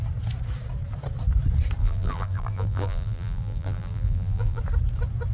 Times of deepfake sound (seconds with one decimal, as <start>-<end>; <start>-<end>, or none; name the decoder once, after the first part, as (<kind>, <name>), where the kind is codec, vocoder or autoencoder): 1.8-4.6 (vocoder, BigVGAN v2)